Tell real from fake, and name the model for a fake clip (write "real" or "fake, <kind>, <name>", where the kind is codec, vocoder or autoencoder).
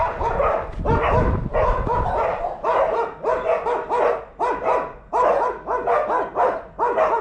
real